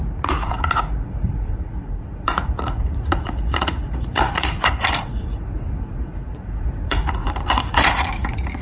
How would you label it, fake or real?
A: fake